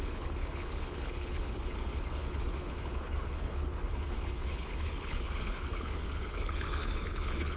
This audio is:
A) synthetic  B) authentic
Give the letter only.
A